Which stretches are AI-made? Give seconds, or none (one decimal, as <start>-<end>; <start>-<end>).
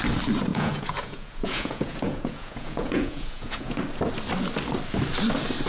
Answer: 0.5-3.8